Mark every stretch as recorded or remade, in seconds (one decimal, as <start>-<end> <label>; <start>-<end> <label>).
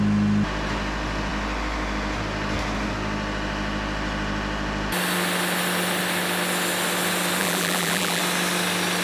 0.0-7.4 recorded; 7.4-8.2 remade; 8.2-9.0 recorded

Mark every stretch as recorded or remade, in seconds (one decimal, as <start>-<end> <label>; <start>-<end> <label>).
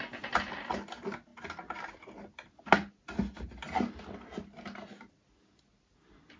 0.0-6.4 recorded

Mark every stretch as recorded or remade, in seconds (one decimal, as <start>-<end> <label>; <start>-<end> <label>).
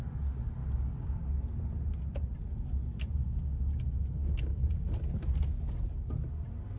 0.0-0.6 recorded; 0.6-1.3 remade; 1.3-3.2 recorded; 3.2-3.8 remade; 3.8-6.8 recorded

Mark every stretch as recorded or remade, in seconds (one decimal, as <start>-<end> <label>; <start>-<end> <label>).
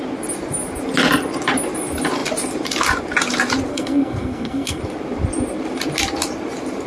0.0-3.7 recorded; 3.7-4.8 remade; 4.8-6.9 recorded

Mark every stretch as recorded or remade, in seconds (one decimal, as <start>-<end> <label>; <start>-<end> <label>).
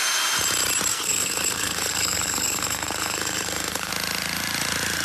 0.0-0.9 recorded; 0.9-3.9 remade; 3.9-5.0 recorded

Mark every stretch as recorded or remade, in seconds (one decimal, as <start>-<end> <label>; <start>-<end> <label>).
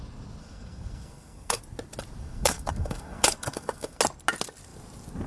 0.0-0.4 recorded; 0.4-1.6 remade; 1.6-2.2 recorded; 2.2-4.0 remade; 4.0-5.3 recorded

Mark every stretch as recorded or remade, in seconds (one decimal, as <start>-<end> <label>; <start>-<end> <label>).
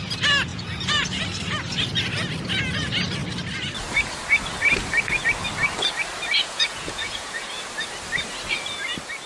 0.0-0.5 recorded; 0.5-1.2 remade; 1.2-6.4 recorded; 6.4-7.5 remade; 7.5-9.3 recorded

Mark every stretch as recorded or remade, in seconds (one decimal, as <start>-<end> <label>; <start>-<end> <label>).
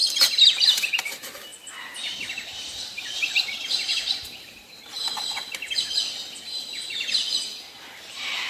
0.0-5.1 remade; 5.1-8.0 recorded; 8.0-8.5 remade